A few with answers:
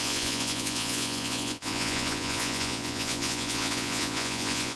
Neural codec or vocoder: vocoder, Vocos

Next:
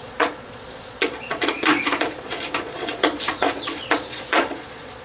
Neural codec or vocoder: vocoder, Vocos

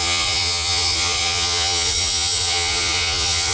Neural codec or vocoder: vocoder, Vocos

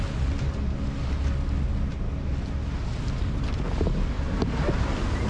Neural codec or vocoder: none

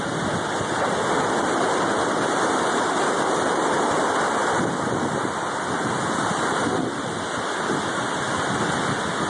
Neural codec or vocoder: none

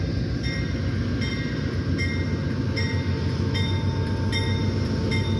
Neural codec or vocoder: none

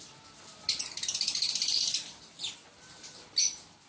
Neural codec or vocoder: none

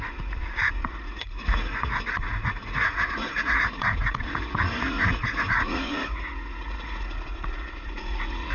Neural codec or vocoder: vocoder, Vocos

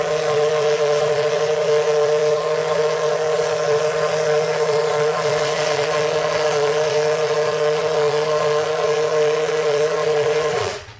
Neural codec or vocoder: vocoder, Vocos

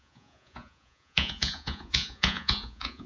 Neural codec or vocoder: vocoder, Vocos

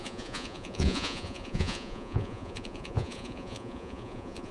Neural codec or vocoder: vocoder, Vocos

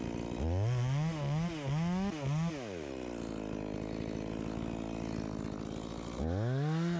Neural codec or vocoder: none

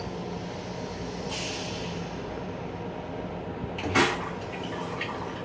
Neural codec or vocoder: none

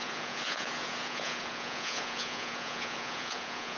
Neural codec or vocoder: vocoder, Vocos